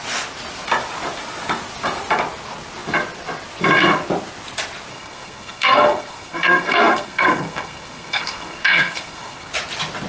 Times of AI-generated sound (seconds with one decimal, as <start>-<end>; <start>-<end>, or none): 4.9-9.5